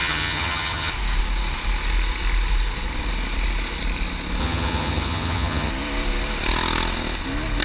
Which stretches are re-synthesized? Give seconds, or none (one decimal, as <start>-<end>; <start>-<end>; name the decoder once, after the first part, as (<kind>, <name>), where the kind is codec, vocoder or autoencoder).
0.0-0.9 (vocoder, HiFi-GAN); 4.4-5.7